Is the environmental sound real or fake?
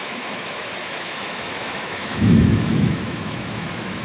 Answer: fake